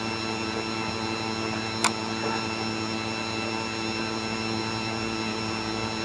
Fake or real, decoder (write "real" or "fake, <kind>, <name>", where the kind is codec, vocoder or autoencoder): real